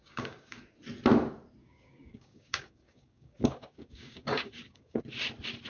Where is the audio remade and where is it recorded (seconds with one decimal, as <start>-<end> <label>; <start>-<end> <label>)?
0.0-0.6 remade; 0.6-1.6 recorded; 1.6-5.0 remade; 5.0-5.7 recorded